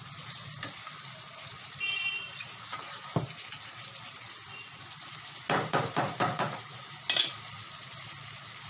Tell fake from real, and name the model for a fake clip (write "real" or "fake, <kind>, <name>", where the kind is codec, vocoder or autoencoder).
real